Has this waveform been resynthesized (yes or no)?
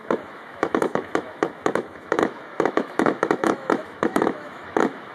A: yes